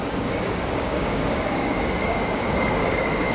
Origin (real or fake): fake